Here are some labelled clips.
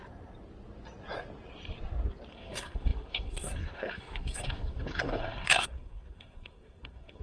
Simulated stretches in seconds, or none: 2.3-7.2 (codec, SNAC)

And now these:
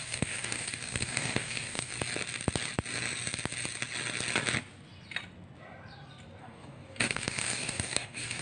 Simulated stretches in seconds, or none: 0.0-1.9 (codec, DAC); 6.4-8.4

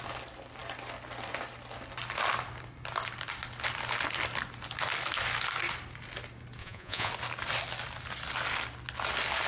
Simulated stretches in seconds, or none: 6.6-7.1 (vocoder, Vocos)

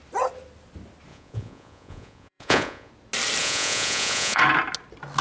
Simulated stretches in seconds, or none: 1.1-2.9 (vocoder, Vocos); 3.4-4.4

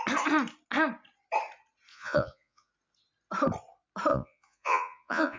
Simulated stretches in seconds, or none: 1.9-2.7 (vocoder, Vocos); 4.1-5.4

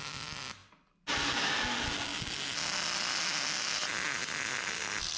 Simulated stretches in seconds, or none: none